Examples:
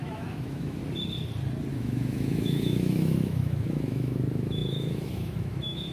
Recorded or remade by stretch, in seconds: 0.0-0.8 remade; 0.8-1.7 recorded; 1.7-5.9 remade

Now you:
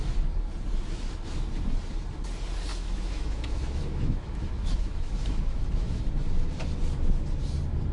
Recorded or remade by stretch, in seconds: 0.0-2.7 recorded; 2.7-6.1 remade; 6.1-7.9 recorded

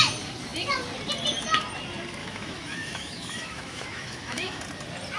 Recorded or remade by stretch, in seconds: 0.0-2.2 recorded; 2.2-4.6 remade; 4.6-5.2 recorded

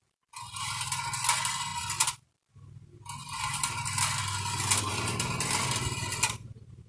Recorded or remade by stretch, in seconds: 0.0-6.9 recorded

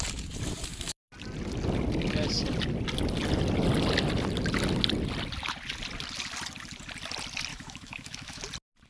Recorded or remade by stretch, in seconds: 0.0-7.5 recorded; 7.5-8.4 remade; 8.4-8.9 recorded

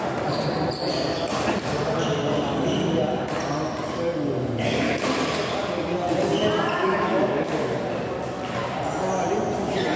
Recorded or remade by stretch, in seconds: 0.0-6.8 recorded; 6.8-7.5 remade; 7.5-10.0 recorded